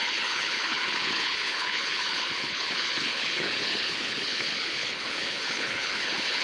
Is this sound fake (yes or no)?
yes